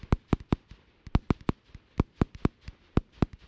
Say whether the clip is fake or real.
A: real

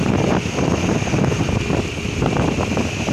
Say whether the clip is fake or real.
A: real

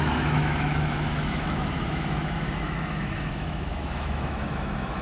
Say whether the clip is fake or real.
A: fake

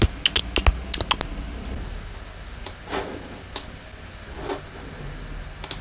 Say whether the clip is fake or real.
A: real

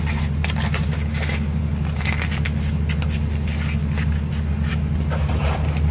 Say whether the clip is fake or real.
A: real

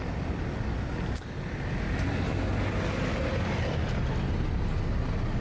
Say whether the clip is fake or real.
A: real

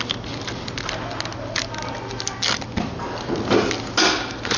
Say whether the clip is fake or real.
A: real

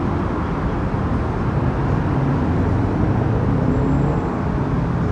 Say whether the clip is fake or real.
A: real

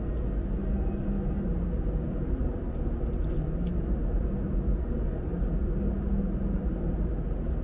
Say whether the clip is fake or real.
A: real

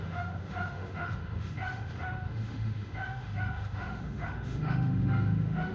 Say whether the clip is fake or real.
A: fake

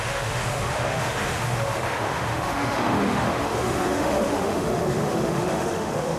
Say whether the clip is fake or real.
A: fake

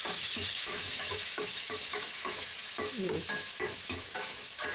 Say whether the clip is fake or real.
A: fake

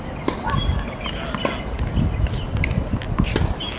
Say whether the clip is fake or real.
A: real